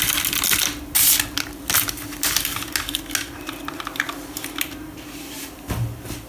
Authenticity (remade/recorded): recorded